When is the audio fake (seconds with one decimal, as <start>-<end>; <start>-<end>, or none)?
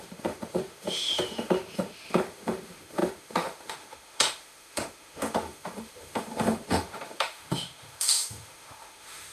0.0-9.3